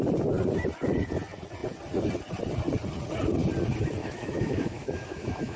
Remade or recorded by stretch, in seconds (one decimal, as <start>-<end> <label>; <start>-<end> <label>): 0.0-4.0 recorded; 4.0-5.6 remade